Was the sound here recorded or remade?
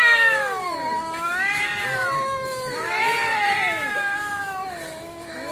remade